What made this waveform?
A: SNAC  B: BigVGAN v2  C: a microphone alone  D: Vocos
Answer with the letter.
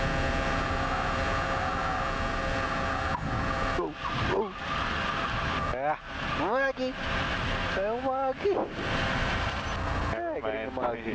C